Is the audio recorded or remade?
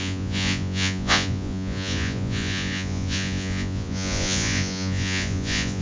remade